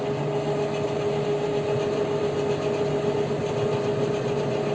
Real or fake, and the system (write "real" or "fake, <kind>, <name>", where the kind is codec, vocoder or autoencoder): real